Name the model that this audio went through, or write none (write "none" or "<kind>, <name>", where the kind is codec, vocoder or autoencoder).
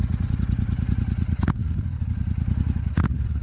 vocoder, Vocos